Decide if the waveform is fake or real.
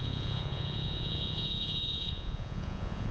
fake